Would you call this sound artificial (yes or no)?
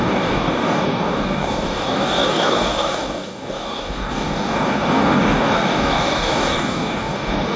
yes